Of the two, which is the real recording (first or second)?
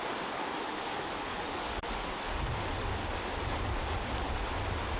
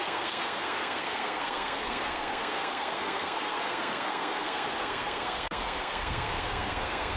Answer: first